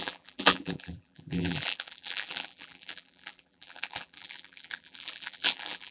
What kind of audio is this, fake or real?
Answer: fake